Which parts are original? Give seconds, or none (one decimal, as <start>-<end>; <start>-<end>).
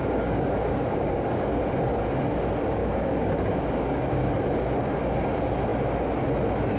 1.6-2.8; 4.3-6.8